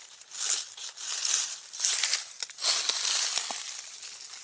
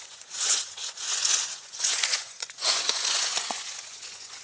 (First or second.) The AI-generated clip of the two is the second